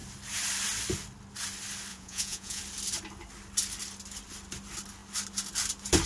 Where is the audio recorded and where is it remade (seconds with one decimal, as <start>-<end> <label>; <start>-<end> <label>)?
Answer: 0.0-1.9 recorded; 1.9-2.6 remade; 2.6-6.1 recorded